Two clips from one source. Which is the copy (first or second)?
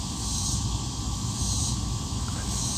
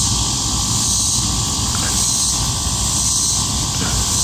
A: first